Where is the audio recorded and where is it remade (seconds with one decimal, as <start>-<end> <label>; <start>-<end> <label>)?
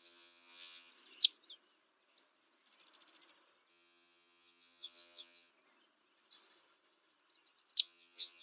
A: 0.0-0.9 remade; 0.9-3.7 recorded; 3.7-5.5 remade; 5.5-7.8 recorded; 7.8-8.4 remade